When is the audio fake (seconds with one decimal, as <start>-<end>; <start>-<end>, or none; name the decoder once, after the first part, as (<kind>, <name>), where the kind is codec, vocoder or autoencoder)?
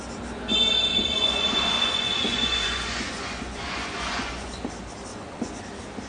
0.9-4.6 (vocoder, Vocos); 5.1-5.6